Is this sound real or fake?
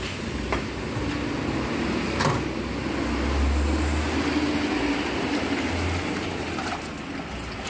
real